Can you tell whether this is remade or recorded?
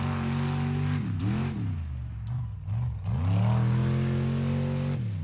recorded